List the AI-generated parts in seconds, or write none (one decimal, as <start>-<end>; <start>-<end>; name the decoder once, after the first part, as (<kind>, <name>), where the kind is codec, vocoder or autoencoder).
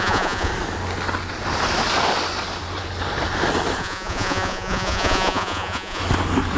0.0-0.5 (vocoder, Vocos); 3.8-6.0